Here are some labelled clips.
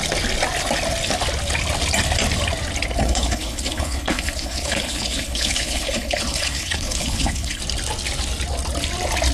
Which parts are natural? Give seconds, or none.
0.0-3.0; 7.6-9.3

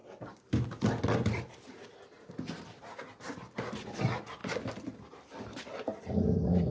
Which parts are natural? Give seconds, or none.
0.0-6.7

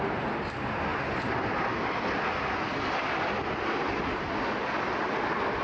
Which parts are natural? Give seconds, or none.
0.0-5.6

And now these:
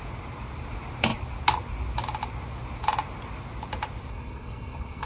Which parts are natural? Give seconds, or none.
0.0-4.1

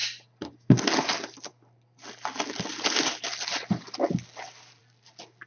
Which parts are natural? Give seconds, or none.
0.0-5.5

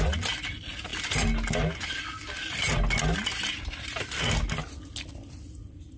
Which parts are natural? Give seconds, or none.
0.0-6.0